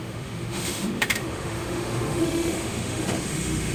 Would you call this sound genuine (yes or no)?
no